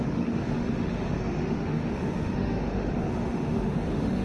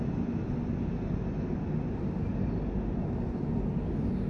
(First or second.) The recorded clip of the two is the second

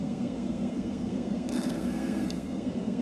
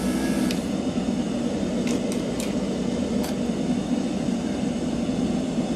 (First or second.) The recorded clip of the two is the second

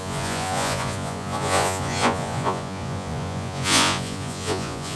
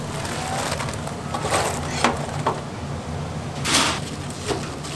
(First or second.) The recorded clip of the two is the second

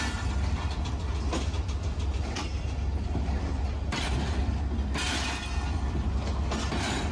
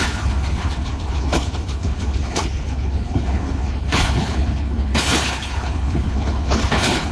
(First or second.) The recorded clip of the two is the first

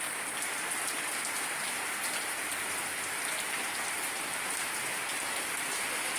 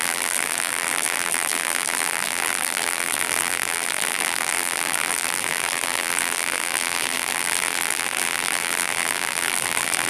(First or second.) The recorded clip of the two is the first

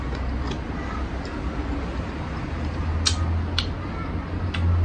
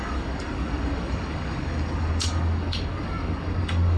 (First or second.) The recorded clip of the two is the first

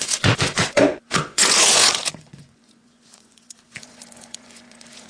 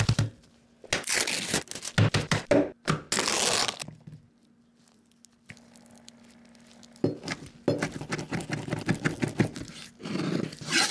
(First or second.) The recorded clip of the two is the second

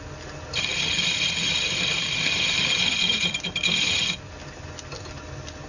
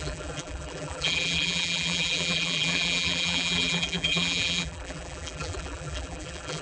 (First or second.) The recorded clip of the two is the first